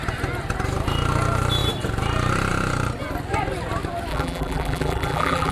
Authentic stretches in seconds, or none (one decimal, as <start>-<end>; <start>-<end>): 0.0-4.1